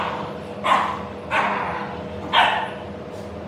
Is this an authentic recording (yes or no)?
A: yes